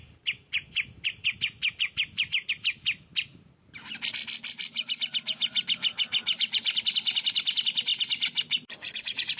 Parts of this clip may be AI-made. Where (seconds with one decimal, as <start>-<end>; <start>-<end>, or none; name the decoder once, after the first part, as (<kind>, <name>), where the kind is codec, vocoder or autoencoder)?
0.0-2.5 (vocoder, BigVGAN v2); 7.9-9.4